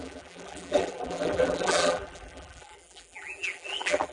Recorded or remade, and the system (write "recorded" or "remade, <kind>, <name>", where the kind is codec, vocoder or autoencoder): remade, vocoder, BigVGAN v2